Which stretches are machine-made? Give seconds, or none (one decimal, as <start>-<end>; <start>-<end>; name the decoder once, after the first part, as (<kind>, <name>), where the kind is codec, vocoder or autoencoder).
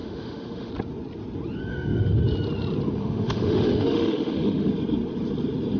0.0-0.7 (autoencoder, DAC-VAE); 1.7-2.2; 3.0-4.7